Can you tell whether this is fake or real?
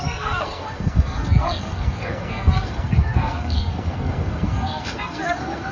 fake